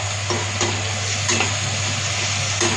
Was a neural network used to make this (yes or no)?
no